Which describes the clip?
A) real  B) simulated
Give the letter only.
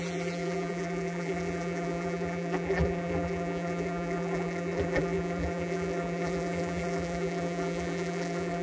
B